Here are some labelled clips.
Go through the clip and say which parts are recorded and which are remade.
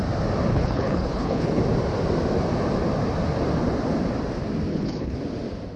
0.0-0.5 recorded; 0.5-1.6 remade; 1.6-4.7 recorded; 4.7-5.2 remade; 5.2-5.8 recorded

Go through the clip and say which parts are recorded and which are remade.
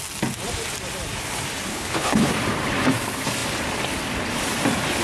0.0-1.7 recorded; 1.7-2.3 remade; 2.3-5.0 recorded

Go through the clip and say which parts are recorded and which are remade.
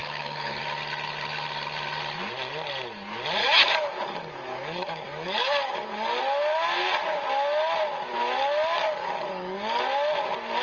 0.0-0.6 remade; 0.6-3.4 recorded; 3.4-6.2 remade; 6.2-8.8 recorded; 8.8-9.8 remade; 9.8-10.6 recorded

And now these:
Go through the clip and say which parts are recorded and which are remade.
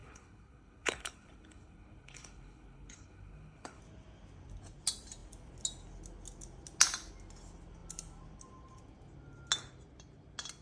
0.0-3.8 remade; 3.8-10.6 recorded